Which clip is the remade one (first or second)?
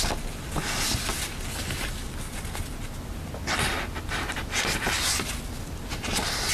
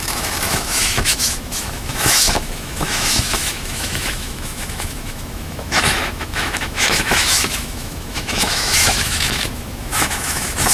second